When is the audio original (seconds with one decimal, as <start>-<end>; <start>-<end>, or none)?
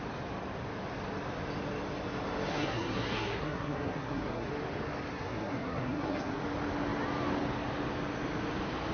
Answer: 0.0-2.5; 4.5-5.1; 6.4-8.9